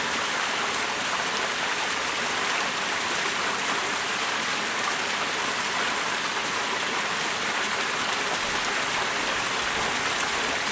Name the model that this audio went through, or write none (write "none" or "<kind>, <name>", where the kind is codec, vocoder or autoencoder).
none